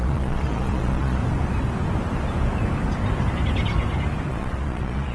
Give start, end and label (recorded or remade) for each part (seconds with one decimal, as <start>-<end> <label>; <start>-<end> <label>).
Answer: 0.0-1.2 remade; 1.2-4.3 recorded; 4.3-5.1 remade